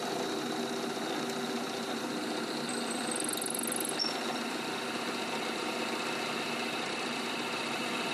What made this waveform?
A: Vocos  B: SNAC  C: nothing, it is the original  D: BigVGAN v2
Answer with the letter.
C